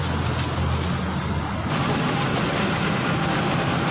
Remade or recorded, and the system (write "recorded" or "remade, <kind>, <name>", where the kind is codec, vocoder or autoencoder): recorded